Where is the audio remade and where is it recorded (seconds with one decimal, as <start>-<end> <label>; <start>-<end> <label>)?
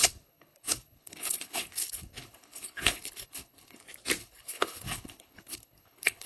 0.0-3.8 remade; 3.8-4.2 recorded; 4.2-6.3 remade